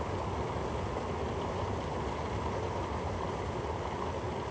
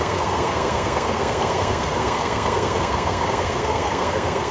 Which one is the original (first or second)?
first